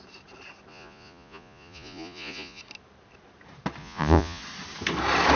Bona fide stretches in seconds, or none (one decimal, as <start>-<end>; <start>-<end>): 0.0-0.7; 2.6-3.8; 4.4-5.4